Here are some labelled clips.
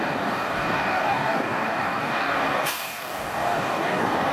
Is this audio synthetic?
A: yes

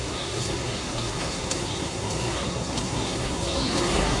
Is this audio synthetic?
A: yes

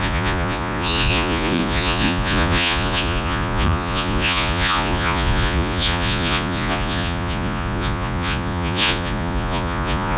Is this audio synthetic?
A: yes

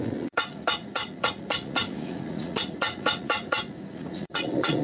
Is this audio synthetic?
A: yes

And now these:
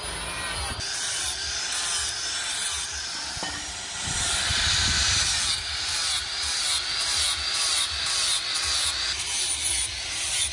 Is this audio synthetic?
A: no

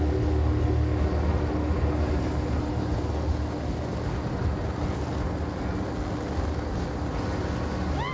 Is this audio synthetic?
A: no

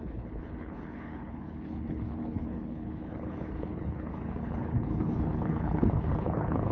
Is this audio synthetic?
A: yes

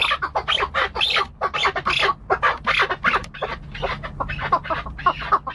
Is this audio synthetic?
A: no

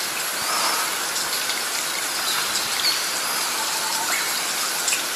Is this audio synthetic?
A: no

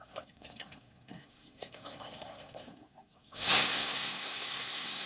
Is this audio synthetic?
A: yes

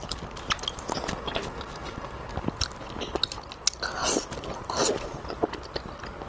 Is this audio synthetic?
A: no